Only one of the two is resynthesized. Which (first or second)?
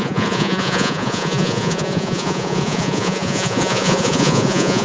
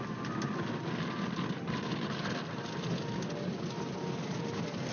first